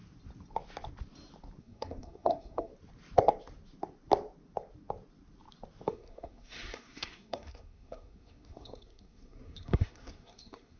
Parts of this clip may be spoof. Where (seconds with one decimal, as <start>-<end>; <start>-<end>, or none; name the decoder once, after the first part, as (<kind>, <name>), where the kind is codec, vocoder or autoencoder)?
1.6-2.7 (codec, SNAC); 5.9-10.8